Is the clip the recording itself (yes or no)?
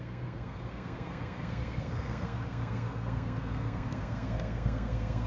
no